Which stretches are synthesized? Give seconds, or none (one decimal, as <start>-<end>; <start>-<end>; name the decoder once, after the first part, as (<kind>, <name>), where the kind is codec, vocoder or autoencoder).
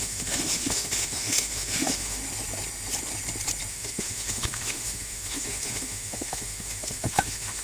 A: 0.0-2.2 (autoencoder, DAC-VAE); 3.7-7.6